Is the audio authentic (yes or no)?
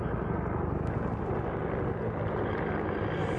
yes